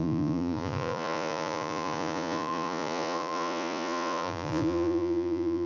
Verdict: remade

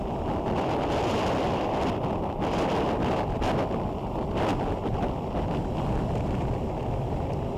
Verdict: recorded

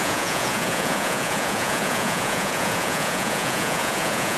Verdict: remade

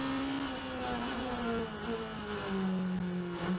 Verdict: recorded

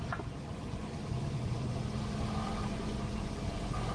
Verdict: remade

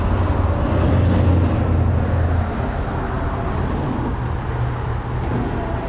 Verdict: recorded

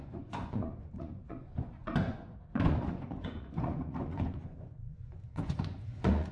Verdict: remade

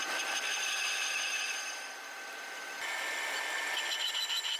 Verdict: recorded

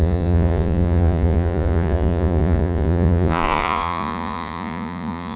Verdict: remade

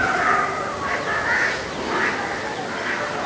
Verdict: recorded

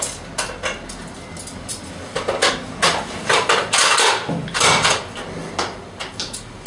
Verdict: recorded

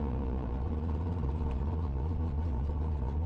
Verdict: remade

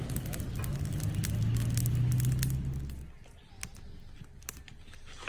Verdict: recorded